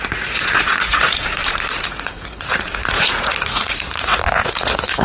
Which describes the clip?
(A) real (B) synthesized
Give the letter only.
B